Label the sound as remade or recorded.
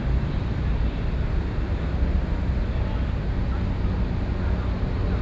recorded